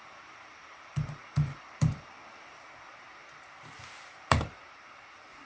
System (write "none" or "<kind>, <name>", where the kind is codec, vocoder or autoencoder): vocoder, BigVGAN v2